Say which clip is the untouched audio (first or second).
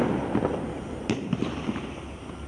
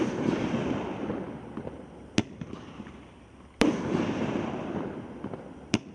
first